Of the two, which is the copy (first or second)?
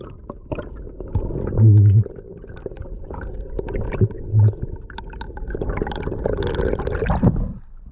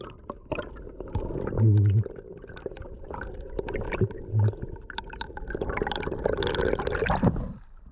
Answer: second